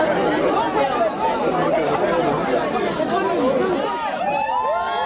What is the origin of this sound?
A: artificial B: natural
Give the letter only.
B